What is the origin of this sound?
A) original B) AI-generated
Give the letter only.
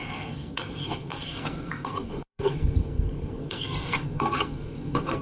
B